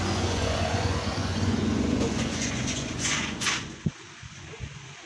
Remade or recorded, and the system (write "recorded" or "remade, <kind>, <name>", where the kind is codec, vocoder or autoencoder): remade, vocoder, Vocos